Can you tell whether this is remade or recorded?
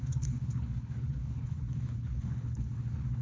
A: remade